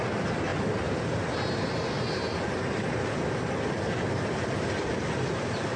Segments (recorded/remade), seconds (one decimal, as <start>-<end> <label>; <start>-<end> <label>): 0.0-5.8 recorded